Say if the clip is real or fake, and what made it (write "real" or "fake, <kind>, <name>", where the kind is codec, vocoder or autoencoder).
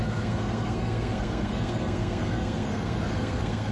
fake, codec, SNAC